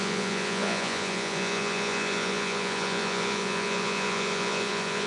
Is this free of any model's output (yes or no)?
no